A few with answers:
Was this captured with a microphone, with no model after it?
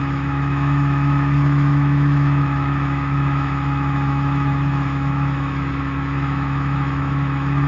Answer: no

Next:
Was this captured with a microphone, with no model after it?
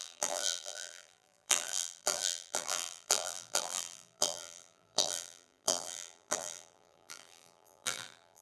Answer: no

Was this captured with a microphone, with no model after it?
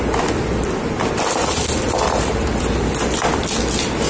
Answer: yes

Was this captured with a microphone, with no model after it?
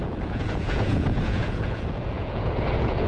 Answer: no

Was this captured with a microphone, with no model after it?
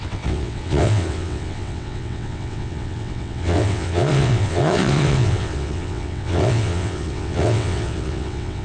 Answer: no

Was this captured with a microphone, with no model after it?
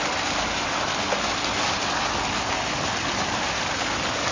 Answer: yes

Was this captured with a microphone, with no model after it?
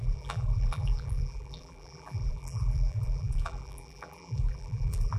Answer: no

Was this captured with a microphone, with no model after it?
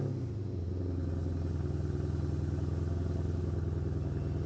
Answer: yes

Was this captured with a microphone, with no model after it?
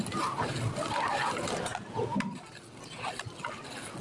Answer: yes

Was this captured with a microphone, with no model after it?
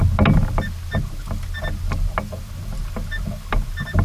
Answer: yes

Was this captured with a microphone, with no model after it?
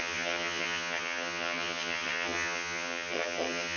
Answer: no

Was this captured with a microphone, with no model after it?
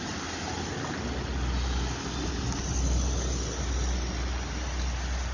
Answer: yes